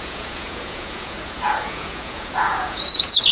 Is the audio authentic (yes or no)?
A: no